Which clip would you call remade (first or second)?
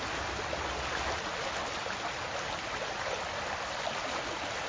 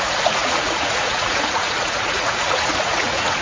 second